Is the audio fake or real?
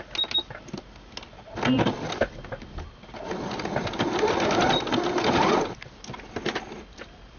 real